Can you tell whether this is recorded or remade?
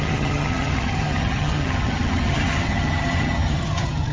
remade